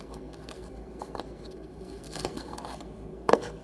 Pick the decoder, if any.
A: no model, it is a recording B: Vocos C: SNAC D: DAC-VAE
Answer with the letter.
C